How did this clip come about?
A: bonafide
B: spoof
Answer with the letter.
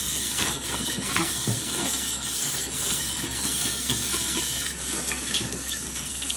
B